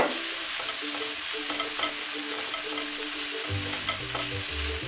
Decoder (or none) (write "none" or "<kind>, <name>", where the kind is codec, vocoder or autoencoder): none